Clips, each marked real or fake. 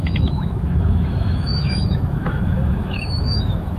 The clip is fake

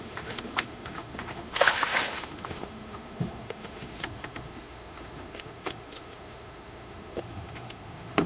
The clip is fake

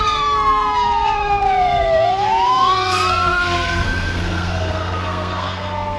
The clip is fake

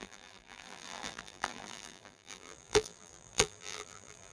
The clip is fake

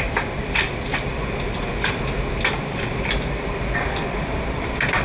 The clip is fake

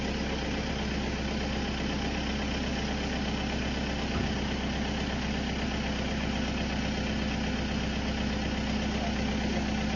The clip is real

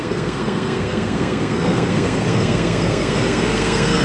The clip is fake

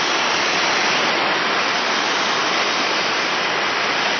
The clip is real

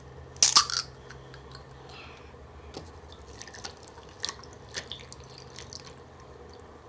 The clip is real